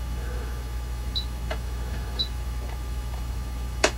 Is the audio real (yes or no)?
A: no